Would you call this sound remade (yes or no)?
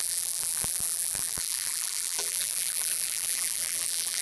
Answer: yes